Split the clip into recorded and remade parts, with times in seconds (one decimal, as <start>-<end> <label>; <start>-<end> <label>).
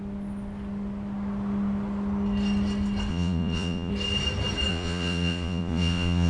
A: 0.0-3.1 recorded; 3.1-3.9 remade; 3.9-4.7 recorded; 4.7-6.3 remade